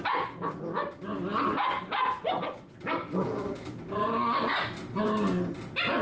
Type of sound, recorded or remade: recorded